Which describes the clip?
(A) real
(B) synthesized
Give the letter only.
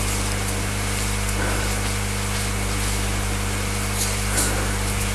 A